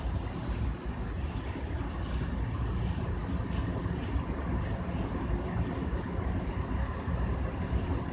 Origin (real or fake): real